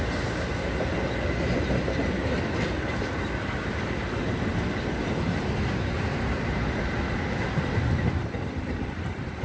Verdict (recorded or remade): recorded